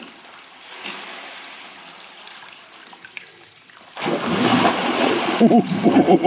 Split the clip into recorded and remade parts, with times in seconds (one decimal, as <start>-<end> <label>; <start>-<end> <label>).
0.0-4.8 recorded; 4.8-5.7 remade; 5.7-6.3 recorded